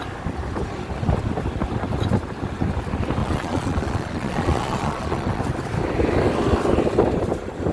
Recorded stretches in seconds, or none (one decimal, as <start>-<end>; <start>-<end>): 0.0-3.2; 5.4-7.7